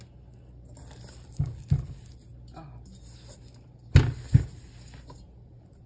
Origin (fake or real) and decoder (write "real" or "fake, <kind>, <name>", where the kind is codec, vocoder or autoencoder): real